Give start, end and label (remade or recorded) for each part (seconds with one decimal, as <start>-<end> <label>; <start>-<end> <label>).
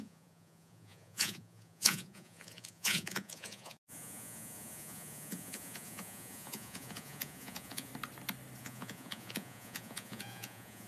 0.0-7.9 remade; 7.9-8.6 recorded; 8.6-10.9 remade